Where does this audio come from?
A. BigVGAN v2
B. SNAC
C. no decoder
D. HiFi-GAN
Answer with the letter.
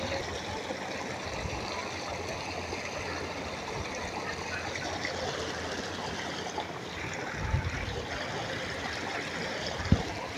C